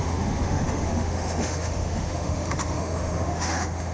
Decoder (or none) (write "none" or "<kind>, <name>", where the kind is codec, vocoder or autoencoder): autoencoder, DAC-VAE